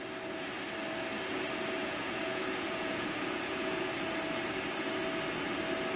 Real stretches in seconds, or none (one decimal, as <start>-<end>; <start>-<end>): 0.0-1.8; 3.9-6.0